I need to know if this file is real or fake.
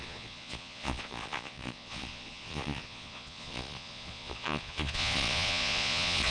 fake